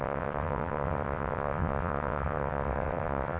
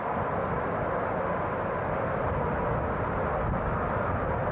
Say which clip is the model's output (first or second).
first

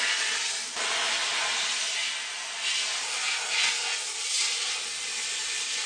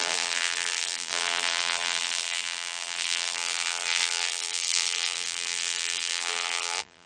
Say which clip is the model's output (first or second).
second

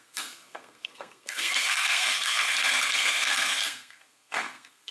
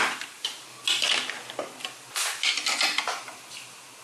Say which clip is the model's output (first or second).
first